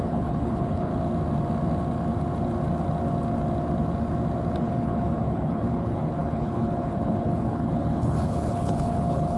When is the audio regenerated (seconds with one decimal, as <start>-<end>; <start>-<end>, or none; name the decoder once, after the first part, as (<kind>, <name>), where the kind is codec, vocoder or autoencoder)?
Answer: 0.0-0.9 (codec, HILCodec); 4.6-9.4

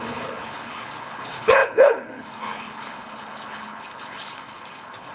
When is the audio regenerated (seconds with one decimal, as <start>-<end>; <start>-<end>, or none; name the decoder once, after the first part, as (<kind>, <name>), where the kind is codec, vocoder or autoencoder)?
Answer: 0.0-5.1 (codec, HILCodec)

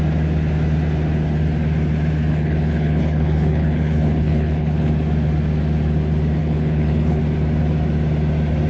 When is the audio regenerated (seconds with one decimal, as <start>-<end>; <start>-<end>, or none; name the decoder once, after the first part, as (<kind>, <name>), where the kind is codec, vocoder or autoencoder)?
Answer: 2.3-4.9 (codec, HILCodec); 6.4-7.2

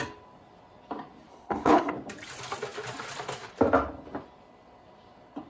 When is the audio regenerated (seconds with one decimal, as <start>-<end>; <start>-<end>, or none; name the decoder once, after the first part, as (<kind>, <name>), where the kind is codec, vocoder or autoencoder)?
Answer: 1.3-1.9 (codec, HILCodec)

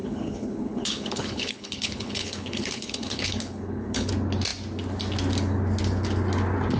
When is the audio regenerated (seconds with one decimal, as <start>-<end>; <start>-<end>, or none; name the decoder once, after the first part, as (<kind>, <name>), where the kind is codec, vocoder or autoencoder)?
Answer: 0.0-4.1 (codec, HILCodec)

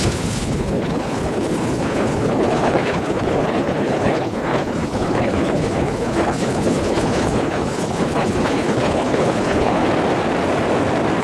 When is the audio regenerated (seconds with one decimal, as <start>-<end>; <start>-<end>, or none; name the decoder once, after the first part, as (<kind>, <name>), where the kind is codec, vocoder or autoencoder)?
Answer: 0.0-9.8 (codec, HILCodec)